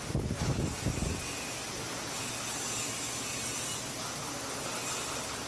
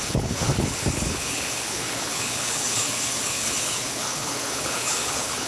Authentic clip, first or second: first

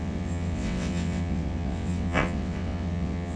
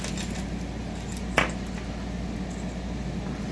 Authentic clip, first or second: second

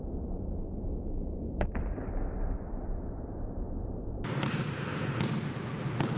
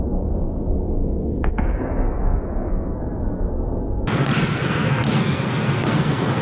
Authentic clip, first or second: first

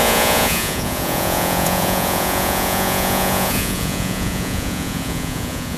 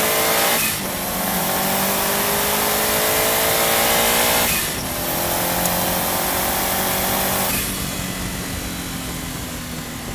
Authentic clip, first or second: second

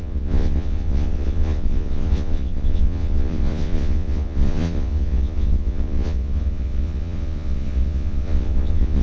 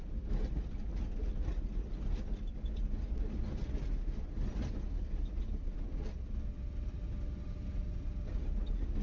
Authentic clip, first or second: second